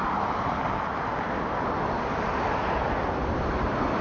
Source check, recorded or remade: recorded